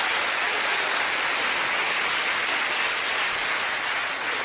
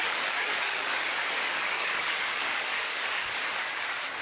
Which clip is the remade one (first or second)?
second